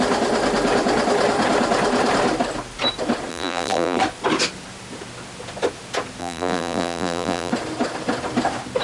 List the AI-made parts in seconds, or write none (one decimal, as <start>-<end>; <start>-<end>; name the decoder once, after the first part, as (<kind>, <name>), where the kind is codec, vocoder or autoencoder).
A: 3.3-4.0 (vocoder, BigVGAN v2); 6.2-7.5